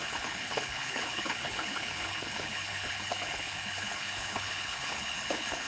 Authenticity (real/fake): fake